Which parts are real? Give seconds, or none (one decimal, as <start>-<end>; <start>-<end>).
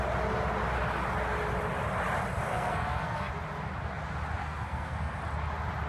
0.0-2.5; 3.3-4.4; 5.2-5.9